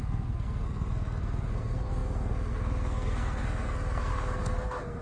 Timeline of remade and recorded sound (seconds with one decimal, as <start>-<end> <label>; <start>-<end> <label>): 0.0-5.0 remade